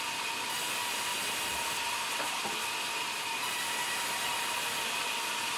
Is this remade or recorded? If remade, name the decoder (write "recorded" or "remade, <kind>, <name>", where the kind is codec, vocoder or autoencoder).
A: recorded